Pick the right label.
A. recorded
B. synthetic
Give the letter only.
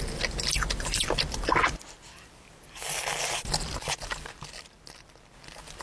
A